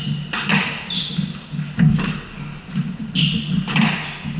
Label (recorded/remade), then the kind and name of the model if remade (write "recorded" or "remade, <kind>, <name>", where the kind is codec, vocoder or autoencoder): recorded